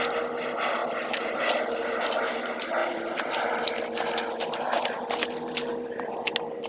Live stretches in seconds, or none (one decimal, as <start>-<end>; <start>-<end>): 0.0-2.8; 4.6-5.7; 6.2-6.7